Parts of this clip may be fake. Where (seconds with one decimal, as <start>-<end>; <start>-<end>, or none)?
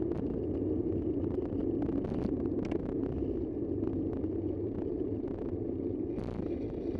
none